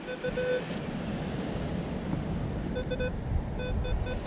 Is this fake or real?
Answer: real